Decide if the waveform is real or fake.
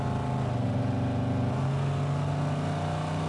real